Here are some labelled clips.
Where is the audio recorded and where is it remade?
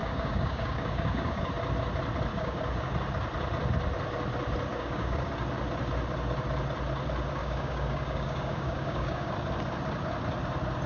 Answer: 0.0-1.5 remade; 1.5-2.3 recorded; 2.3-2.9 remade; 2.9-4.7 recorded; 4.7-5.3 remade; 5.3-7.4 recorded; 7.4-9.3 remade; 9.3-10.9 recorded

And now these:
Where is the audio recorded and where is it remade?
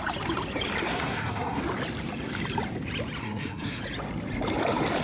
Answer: 0.0-0.9 recorded; 0.9-1.6 remade; 1.6-3.2 recorded; 3.2-3.8 remade; 3.8-5.0 recorded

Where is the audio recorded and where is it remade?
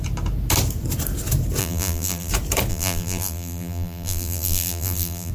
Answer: 0.0-1.6 recorded; 1.6-2.3 remade; 2.3-2.7 recorded; 2.7-5.3 remade